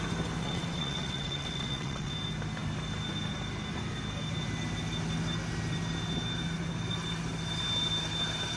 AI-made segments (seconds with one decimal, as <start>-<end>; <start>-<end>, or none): 0.4-2.1